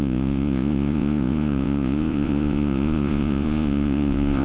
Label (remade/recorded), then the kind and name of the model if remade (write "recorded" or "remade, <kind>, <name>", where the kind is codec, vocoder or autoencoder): remade, vocoder, Vocos